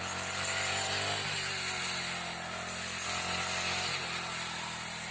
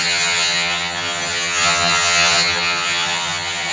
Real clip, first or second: first